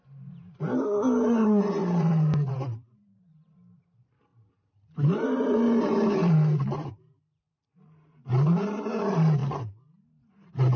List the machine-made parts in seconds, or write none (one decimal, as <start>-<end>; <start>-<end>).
0.0-10.8